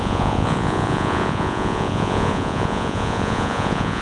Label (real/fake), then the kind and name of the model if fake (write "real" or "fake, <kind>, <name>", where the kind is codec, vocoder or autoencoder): fake, vocoder, Vocos